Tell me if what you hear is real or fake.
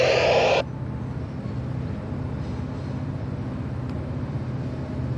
real